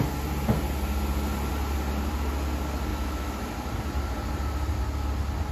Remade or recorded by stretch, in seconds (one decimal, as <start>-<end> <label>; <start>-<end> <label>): 0.0-2.9 recorded; 2.9-3.5 remade; 3.5-5.5 recorded